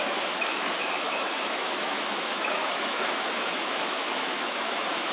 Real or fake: fake